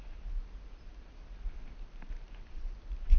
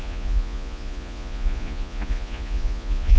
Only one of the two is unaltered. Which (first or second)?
first